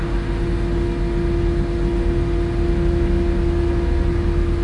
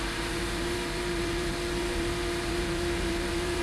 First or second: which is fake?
second